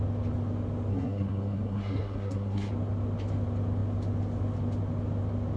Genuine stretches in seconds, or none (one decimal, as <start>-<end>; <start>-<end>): 0.0-0.9; 2.7-5.6

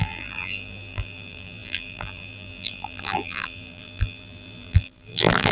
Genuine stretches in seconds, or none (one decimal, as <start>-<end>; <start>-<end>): none